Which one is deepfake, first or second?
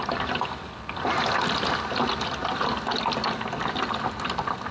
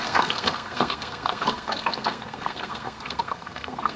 second